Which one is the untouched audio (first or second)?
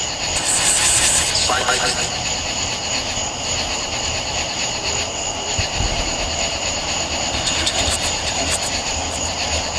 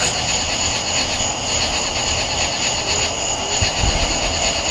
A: second